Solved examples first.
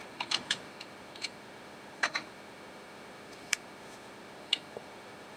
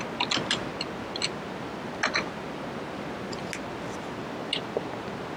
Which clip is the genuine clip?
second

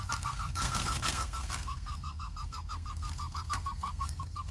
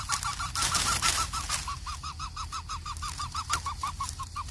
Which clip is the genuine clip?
second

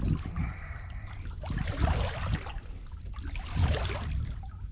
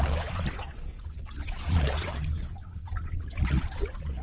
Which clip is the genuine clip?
first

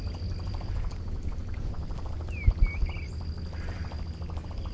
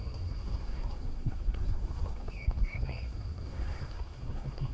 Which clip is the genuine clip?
first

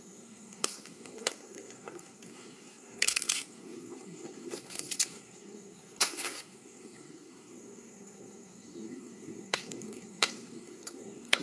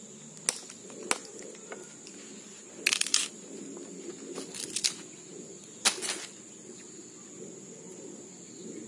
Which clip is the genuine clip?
second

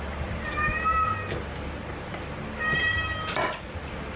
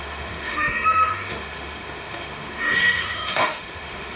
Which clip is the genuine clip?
first